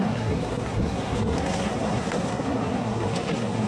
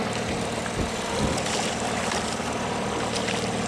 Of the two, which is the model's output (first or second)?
first